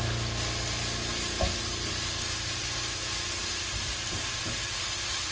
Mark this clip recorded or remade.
recorded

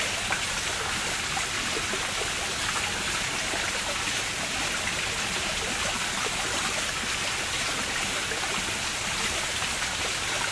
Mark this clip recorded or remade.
recorded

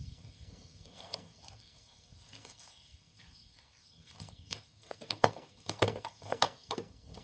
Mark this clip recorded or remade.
remade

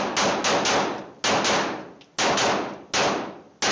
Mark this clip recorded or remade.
recorded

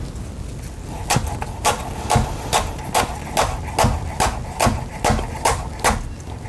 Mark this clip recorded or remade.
recorded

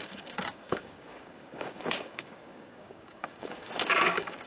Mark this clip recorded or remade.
remade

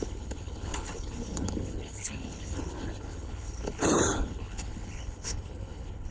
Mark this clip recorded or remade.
remade